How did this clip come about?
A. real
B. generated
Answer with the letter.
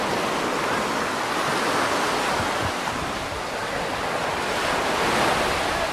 A